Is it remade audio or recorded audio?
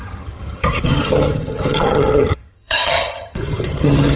remade